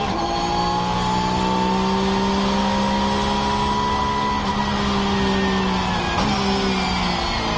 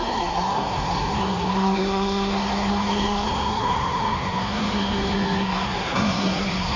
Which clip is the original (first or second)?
first